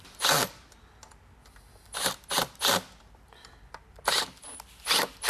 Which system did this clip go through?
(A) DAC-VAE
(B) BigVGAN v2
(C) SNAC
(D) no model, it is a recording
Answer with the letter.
D